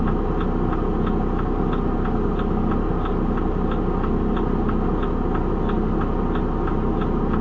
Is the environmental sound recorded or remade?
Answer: recorded